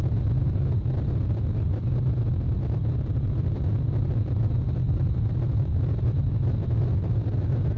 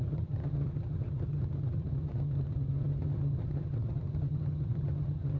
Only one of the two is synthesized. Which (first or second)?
second